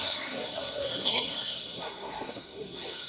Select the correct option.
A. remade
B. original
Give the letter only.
A